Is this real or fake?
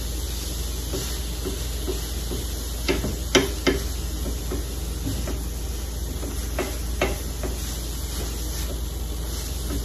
real